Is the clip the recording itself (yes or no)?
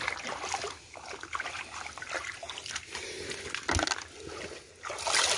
yes